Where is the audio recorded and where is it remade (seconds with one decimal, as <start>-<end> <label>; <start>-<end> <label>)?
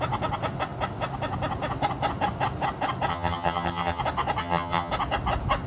0.0-3.1 recorded; 3.1-4.0 remade; 4.0-4.4 recorded; 4.4-4.9 remade; 4.9-5.7 recorded